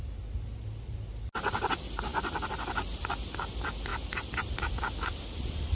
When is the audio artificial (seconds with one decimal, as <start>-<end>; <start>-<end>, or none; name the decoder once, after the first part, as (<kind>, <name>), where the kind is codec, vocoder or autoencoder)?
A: none